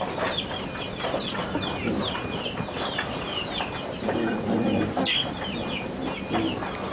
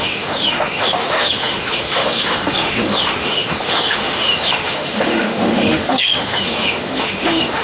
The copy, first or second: second